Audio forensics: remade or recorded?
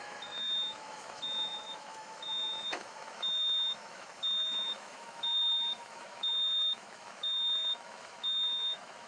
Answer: remade